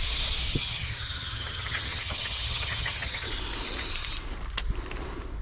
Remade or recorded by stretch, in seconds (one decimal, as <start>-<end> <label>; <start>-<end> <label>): 0.0-0.5 recorded; 0.5-3.3 remade; 3.3-5.4 recorded